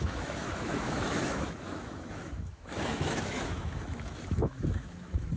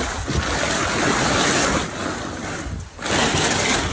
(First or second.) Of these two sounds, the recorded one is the second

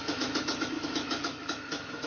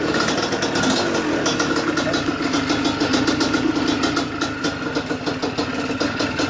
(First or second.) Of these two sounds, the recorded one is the second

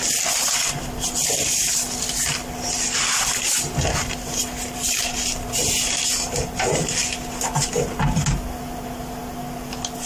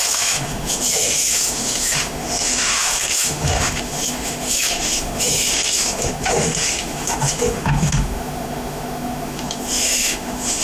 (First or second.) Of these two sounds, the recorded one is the first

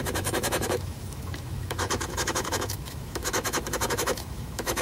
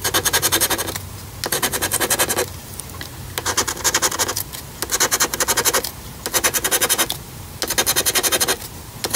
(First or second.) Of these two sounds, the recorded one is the second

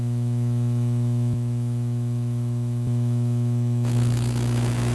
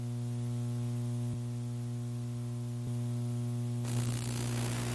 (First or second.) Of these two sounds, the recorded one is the second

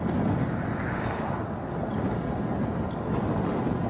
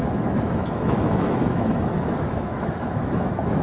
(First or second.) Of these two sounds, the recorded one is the first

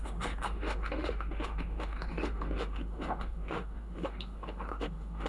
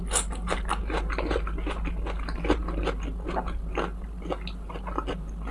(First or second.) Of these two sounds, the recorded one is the second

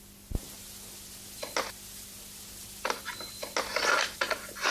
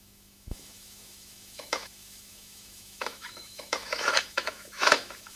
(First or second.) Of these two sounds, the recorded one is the first